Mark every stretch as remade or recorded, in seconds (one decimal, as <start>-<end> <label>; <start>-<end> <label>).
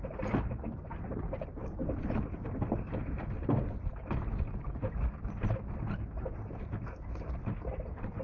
0.0-1.8 remade; 1.8-3.4 recorded; 3.4-8.2 remade